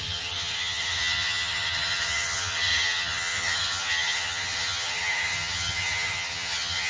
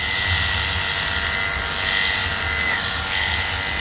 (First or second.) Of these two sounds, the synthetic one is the first